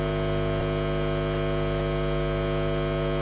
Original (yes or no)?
yes